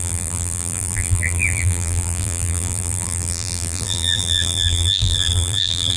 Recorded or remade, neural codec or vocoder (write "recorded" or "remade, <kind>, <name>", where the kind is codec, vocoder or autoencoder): remade, vocoder, BigVGAN v2